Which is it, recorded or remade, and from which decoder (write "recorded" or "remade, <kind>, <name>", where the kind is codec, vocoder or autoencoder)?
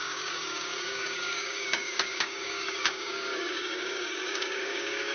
remade, codec, DAC